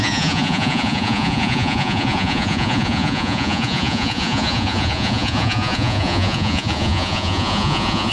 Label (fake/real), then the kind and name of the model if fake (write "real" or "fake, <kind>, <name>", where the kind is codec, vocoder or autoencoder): fake, vocoder, Vocos